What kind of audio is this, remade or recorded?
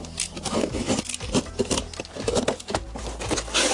recorded